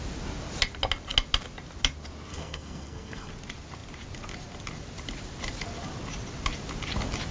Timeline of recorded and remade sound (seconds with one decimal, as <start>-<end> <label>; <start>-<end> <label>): 0.0-2.3 recorded; 2.3-3.3 remade; 3.3-7.3 recorded